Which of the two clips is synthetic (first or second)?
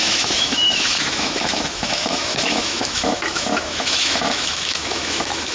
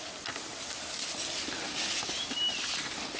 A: first